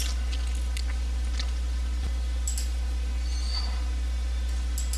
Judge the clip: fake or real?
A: real